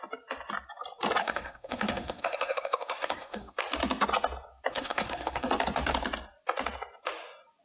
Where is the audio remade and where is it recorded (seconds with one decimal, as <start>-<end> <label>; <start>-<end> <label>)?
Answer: 0.0-1.2 recorded; 1.2-3.6 remade; 3.6-4.7 recorded; 4.7-5.5 remade; 5.5-7.6 recorded